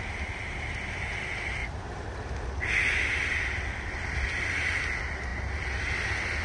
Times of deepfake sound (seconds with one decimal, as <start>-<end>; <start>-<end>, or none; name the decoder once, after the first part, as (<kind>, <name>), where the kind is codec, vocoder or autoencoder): none